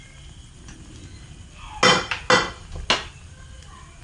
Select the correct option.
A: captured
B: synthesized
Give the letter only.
A